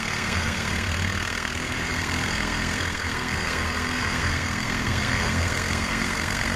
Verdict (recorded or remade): remade